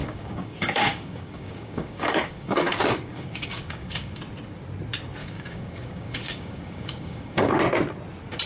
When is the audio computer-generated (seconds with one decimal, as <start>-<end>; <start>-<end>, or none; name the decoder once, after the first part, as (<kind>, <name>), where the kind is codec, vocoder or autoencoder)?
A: 0.0-4.2 (codec, DAC); 5.2-7.6

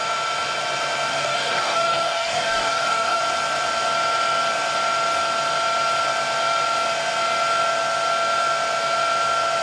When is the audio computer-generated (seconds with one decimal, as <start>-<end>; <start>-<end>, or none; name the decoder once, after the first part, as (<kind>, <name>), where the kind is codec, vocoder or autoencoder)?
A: 1.1-3.2 (codec, DAC)